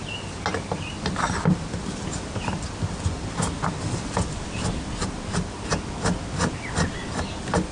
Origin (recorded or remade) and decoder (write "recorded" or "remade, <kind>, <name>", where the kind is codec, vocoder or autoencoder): recorded